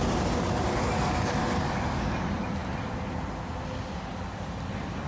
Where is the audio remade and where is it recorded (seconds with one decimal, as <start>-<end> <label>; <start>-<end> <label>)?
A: 0.0-5.1 recorded